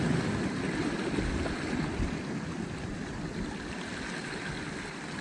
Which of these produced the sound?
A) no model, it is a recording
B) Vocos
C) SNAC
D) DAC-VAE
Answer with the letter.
A